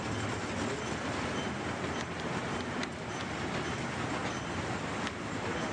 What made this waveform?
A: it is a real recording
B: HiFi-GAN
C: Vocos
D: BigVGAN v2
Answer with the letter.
A